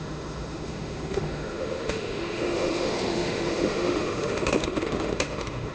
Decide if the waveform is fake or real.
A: fake